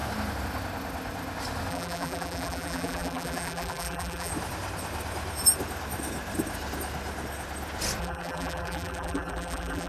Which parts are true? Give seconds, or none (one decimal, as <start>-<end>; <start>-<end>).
0.0-1.7; 4.3-8.0